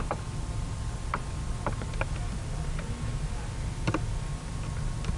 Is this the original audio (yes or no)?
yes